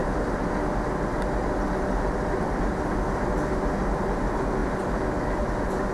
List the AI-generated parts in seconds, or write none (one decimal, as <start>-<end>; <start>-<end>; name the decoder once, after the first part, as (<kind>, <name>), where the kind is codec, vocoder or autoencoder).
none